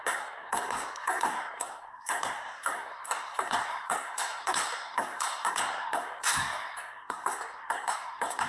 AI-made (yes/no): yes